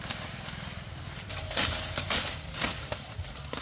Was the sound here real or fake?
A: fake